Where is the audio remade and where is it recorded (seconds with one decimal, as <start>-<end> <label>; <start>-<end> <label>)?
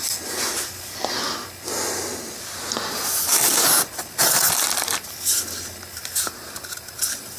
0.0-7.4 recorded